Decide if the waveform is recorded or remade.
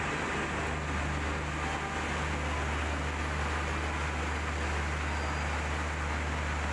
recorded